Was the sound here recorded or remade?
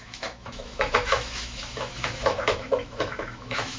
remade